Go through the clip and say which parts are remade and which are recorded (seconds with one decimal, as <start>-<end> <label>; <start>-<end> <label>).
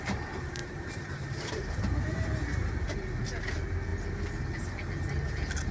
0.0-0.6 recorded; 0.6-3.1 remade; 3.1-5.7 recorded